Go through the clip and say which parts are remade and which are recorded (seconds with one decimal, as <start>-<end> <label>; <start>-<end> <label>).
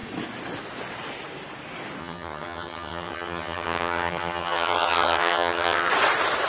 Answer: 0.0-2.0 recorded; 2.0-5.9 remade; 5.9-6.5 recorded